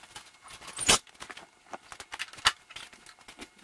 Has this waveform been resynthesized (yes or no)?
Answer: no